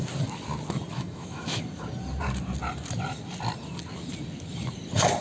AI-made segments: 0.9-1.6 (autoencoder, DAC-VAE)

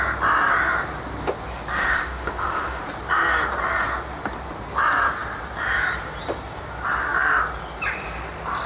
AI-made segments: 1.8-2.8 (autoencoder, DAC-VAE)